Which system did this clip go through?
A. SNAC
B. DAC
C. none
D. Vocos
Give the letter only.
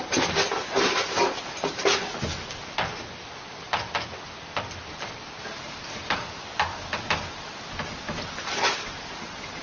C